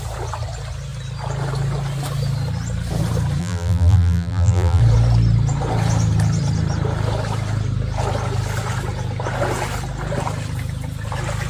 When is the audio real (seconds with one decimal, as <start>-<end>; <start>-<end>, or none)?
0.0-3.4; 4.8-11.5